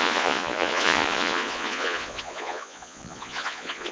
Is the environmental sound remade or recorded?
remade